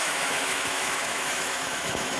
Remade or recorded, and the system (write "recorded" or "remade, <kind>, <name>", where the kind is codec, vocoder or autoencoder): remade, autoencoder, DAC-VAE